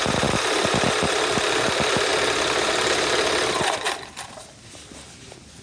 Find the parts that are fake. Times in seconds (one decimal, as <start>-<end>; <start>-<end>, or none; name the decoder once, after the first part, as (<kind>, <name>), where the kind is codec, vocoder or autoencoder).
none